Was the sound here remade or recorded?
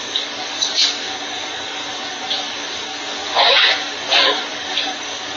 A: remade